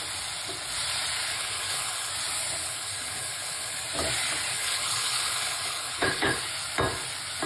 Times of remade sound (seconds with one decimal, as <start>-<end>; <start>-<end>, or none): 1.3-2.1; 2.6-3.7; 4.5-6.5